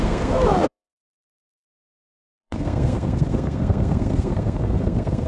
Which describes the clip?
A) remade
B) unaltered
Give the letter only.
A